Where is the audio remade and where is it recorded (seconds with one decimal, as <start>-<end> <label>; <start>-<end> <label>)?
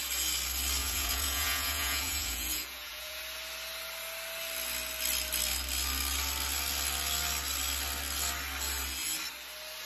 0.0-0.8 recorded; 0.8-3.2 remade; 3.2-9.9 recorded